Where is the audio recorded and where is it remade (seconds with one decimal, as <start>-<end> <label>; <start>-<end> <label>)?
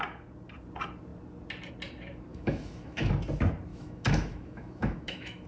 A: 0.0-2.3 recorded; 2.3-3.1 remade; 3.1-3.7 recorded; 3.7-5.5 remade